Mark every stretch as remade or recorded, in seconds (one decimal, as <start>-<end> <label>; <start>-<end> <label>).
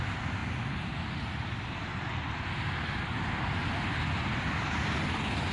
0.0-5.5 recorded